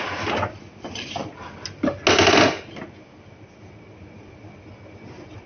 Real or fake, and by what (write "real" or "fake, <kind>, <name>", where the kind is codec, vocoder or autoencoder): real